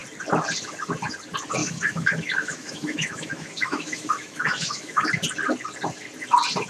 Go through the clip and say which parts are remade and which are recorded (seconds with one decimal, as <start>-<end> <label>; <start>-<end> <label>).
0.0-1.6 recorded; 1.6-5.1 remade; 5.1-6.7 recorded